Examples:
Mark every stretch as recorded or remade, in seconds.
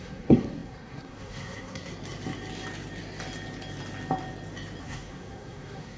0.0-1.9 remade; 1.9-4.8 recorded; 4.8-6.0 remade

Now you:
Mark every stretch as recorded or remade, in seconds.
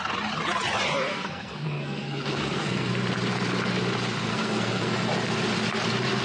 0.0-1.1 recorded; 1.1-2.9 remade; 2.9-4.3 recorded; 4.3-4.9 remade; 4.9-6.2 recorded